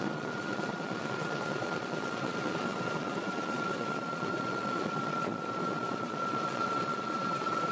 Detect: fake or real fake